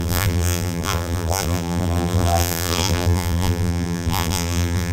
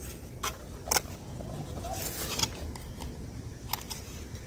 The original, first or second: second